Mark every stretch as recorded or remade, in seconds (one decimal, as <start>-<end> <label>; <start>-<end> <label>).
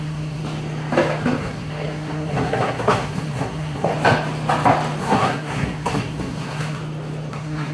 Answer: 0.0-0.4 remade; 0.4-1.4 recorded; 1.4-3.9 remade; 3.9-5.0 recorded; 5.0-6.8 remade; 6.8-7.3 recorded; 7.3-7.7 remade